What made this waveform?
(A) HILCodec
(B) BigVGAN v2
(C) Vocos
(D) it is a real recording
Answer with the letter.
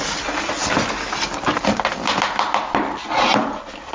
D